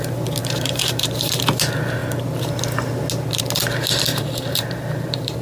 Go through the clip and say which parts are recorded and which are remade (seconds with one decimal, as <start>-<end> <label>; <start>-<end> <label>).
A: 0.0-0.4 recorded; 0.4-1.3 remade; 1.3-4.1 recorded; 4.1-5.4 remade